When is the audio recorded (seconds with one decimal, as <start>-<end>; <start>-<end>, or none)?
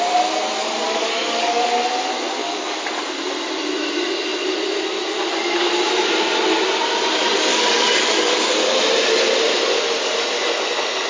0.0-0.6; 1.6-2.4; 3.0-7.5; 8.3-11.1